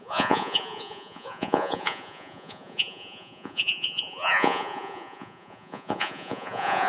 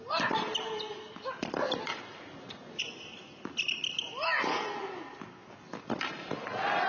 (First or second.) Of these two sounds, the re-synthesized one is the first